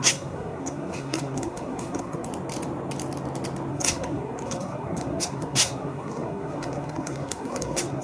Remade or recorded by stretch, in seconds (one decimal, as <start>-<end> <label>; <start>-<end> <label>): 0.0-2.3 remade; 2.3-3.7 recorded; 3.7-8.0 remade